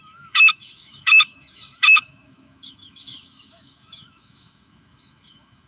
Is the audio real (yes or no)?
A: no